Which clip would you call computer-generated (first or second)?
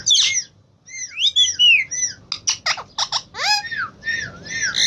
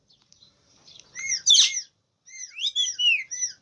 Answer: second